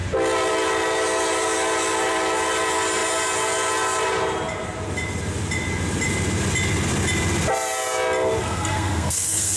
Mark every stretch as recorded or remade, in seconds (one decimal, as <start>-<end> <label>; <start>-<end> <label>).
0.0-8.4 recorded; 8.4-9.6 remade